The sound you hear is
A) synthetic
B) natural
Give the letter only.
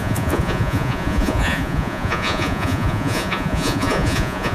A